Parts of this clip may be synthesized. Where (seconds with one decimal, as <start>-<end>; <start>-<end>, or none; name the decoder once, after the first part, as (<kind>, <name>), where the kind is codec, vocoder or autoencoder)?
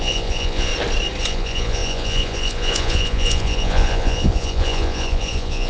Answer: 0.0-0.7 (vocoder, Vocos); 1.2-5.7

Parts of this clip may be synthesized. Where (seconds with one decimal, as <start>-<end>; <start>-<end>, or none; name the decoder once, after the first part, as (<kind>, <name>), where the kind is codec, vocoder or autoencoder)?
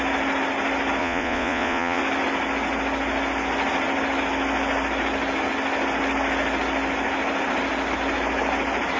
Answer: 1.0-2.0 (vocoder, Vocos)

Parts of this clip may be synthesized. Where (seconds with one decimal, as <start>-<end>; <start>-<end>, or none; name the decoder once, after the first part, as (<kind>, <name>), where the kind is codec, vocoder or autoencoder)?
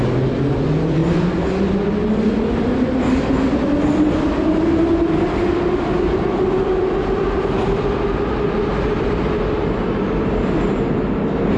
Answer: none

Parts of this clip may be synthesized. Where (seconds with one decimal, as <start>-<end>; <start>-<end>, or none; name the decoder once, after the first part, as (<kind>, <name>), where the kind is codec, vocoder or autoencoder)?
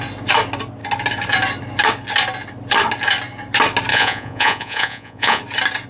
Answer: 3.9-5.4 (vocoder, Vocos)